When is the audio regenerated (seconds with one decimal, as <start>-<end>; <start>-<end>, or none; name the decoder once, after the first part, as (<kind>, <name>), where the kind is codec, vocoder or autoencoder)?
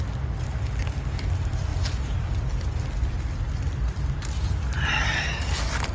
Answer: none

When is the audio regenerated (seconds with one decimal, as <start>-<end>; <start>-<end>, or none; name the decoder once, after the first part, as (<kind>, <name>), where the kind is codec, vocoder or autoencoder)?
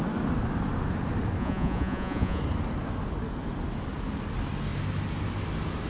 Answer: 1.4-2.4 (vocoder, Vocos)